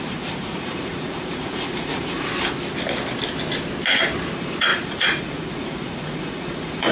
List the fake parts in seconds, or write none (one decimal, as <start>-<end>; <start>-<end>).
0.0-2.3; 4.3-6.9